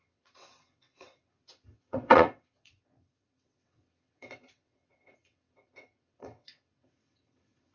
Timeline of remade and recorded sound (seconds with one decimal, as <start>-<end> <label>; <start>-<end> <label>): 0.0-7.7 remade